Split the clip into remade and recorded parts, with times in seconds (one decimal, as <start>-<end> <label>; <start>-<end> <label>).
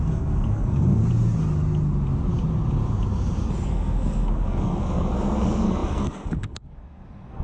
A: 0.0-1.0 remade; 1.0-3.7 recorded; 3.7-7.4 remade